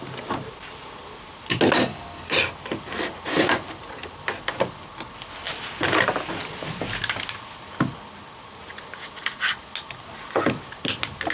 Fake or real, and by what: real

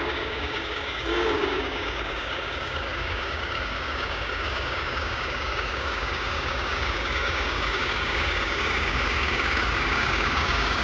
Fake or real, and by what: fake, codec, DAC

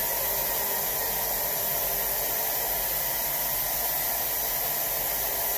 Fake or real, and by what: real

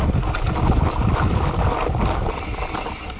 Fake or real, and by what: real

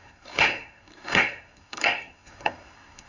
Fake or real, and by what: fake, codec, SNAC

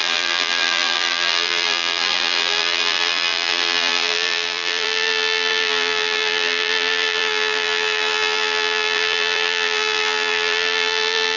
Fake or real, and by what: fake, vocoder, BigVGAN v2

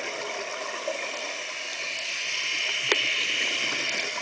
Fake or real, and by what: real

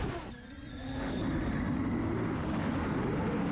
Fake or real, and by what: real